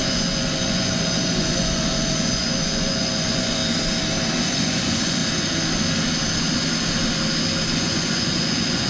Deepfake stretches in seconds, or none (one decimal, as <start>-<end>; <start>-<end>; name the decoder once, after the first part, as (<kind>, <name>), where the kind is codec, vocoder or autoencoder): 0.0-3.6 (vocoder, Vocos); 4.4-5.2; 7.7-8.9